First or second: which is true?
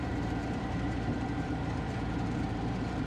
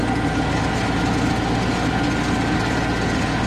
second